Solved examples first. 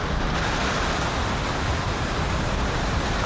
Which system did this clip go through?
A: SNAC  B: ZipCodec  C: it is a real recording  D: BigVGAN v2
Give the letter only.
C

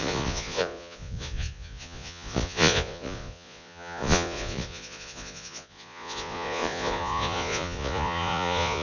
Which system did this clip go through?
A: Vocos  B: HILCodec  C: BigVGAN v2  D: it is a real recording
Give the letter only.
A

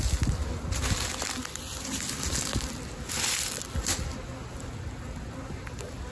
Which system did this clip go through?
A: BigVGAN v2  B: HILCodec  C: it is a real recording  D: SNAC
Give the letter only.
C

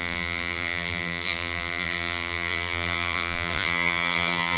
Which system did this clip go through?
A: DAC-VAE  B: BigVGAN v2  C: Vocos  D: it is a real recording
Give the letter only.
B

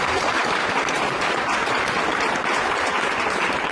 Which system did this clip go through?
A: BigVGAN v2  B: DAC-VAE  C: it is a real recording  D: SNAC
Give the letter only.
A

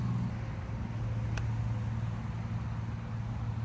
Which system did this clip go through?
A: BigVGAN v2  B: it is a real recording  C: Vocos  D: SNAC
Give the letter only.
B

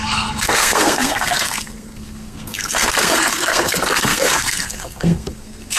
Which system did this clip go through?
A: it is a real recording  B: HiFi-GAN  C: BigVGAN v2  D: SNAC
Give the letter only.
D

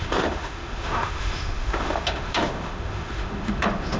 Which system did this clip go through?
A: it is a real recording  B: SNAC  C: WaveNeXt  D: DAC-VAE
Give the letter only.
D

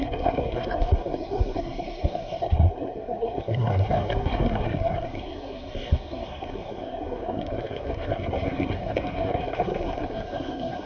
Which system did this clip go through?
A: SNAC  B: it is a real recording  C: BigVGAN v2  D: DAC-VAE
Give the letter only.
A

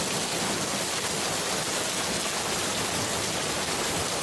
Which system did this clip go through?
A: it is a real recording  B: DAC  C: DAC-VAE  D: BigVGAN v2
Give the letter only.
A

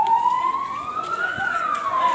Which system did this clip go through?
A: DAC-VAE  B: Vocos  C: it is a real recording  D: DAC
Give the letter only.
B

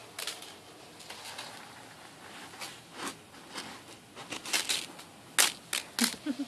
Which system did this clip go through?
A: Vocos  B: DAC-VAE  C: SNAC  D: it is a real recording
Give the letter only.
D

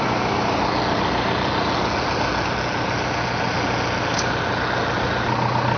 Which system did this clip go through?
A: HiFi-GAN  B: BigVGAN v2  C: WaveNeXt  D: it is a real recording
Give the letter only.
D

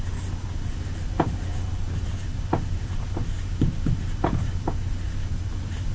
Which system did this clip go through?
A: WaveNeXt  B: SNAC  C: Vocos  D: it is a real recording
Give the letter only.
D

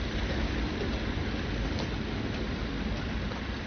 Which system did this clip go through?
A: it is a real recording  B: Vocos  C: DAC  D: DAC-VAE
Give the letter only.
A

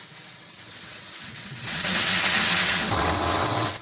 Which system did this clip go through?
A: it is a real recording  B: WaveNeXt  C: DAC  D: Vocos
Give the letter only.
B